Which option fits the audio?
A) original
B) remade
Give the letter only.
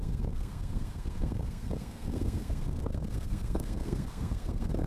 B